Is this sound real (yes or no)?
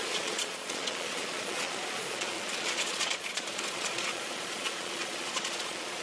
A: no